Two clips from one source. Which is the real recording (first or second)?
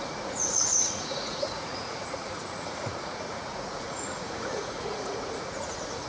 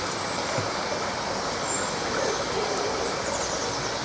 second